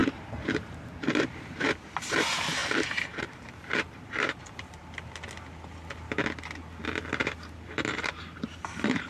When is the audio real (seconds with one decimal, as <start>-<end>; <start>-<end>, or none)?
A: 2.6-3.2; 4.8-7.2